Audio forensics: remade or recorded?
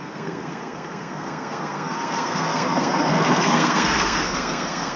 remade